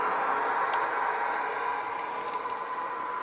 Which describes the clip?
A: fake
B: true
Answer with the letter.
B